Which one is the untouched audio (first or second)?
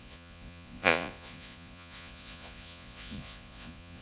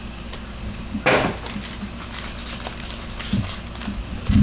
second